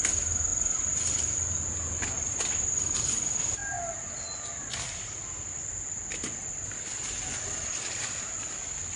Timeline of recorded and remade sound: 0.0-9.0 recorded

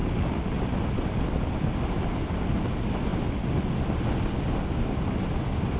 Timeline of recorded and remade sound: 0.0-5.8 recorded

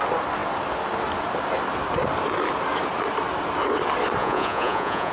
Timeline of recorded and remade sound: 0.0-4.2 recorded; 4.2-5.1 remade

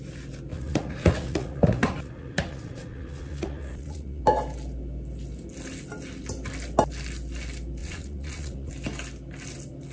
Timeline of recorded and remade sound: 0.0-0.5 recorded; 0.5-4.2 remade; 4.2-7.8 recorded; 7.8-8.7 remade; 8.7-9.9 recorded